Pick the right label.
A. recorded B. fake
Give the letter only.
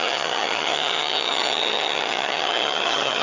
B